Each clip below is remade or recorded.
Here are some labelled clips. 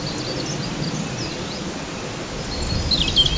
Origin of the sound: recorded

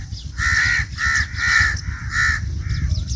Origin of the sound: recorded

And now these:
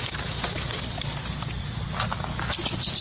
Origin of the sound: recorded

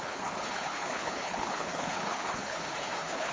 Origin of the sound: remade